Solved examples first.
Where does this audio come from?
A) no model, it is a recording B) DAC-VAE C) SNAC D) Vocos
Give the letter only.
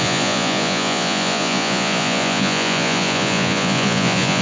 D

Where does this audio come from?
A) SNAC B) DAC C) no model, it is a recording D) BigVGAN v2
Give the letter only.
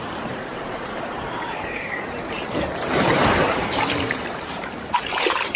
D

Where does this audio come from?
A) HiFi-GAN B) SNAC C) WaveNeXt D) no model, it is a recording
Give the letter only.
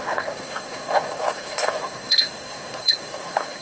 B